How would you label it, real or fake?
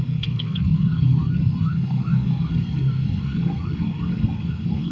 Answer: fake